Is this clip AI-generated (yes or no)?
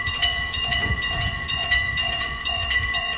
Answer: yes